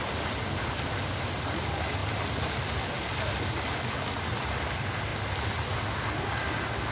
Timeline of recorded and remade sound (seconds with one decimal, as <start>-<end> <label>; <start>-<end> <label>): 0.0-6.9 recorded